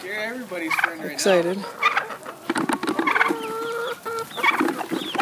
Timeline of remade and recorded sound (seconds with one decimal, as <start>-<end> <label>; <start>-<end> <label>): 0.0-5.2 recorded